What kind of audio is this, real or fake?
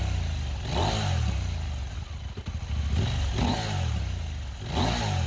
real